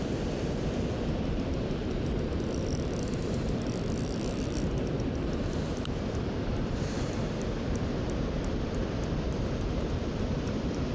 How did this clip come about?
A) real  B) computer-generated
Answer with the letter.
B